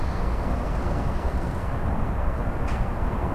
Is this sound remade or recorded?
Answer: remade